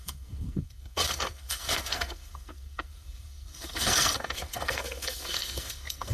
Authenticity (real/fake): fake